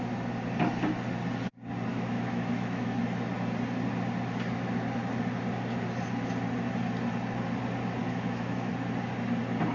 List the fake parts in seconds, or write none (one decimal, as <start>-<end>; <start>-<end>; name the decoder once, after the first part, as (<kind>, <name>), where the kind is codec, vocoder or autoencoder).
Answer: 1.9-3.0 (autoencoder, DAC-VAE); 8.0-8.7